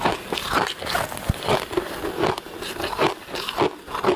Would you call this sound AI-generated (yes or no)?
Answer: no